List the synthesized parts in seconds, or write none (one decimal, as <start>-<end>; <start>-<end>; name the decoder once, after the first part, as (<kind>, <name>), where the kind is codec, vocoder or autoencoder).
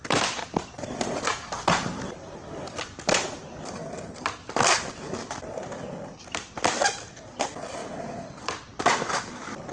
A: 0.0-3.8 (vocoder, BigVGAN v2); 4.9-9.7